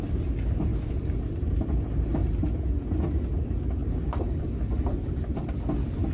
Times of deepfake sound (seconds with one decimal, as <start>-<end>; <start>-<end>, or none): none